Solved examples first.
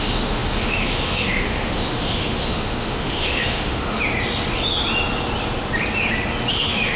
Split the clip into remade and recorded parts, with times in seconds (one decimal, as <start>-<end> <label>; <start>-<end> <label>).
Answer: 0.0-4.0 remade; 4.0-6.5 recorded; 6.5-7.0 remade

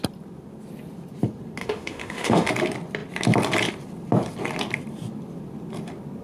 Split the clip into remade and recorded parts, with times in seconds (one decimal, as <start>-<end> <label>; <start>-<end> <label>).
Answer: 0.0-1.6 recorded; 1.6-2.5 remade; 2.5-6.2 recorded

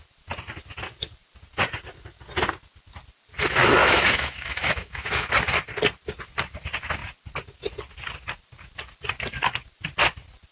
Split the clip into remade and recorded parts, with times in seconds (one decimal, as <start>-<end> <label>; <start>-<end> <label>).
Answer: 0.0-3.8 recorded; 3.8-5.3 remade; 5.3-10.5 recorded